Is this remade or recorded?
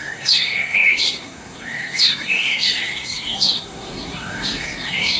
remade